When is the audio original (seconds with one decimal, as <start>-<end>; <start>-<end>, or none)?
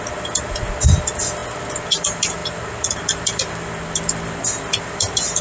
0.0-5.4